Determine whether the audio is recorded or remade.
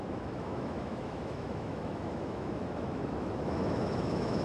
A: remade